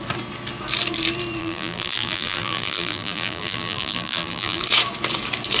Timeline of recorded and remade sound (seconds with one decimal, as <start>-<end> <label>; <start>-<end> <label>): 0.0-1.4 recorded; 1.4-4.6 remade; 4.6-5.6 recorded